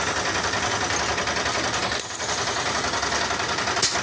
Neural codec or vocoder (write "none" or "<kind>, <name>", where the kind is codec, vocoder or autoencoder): none